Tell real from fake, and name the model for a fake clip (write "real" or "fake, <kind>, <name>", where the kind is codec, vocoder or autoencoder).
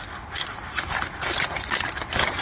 real